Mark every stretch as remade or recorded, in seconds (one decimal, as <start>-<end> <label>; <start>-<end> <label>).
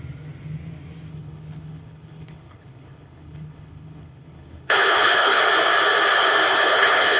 0.0-1.1 recorded; 1.1-5.4 remade; 5.4-6.5 recorded; 6.5-7.2 remade